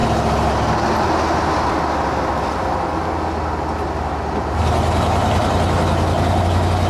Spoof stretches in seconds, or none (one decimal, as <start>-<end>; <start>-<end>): none